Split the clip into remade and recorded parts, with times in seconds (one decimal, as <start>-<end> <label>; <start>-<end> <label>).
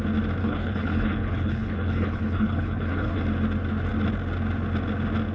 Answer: 0.0-0.4 recorded; 0.4-3.2 remade; 3.2-5.3 recorded